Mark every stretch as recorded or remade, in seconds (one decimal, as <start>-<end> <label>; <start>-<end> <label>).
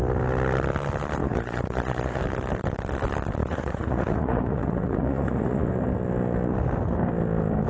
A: 0.0-1.2 recorded; 1.2-2.2 remade; 2.2-3.4 recorded; 3.4-5.7 remade; 5.7-7.7 recorded